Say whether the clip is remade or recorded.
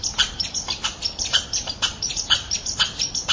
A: remade